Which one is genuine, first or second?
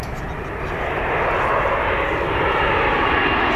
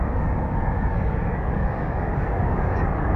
first